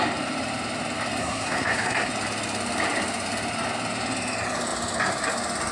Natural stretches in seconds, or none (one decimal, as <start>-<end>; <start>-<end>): 0.0-1.2; 2.1-5.7